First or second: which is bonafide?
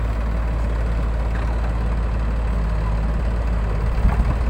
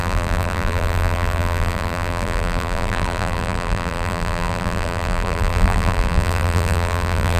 first